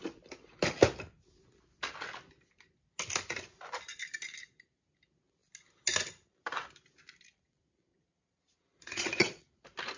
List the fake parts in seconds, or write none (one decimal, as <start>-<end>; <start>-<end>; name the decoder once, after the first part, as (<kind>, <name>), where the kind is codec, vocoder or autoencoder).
7.9-9.4 (vocoder, Vocos)